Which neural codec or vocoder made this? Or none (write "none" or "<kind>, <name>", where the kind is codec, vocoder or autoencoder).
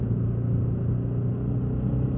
none